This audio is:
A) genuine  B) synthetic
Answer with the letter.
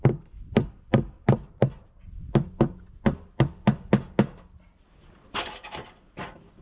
A